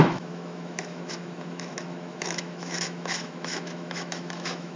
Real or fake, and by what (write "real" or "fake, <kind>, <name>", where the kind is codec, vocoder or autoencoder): fake, autoencoder, DAC-VAE